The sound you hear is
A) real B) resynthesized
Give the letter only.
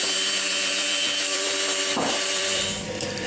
B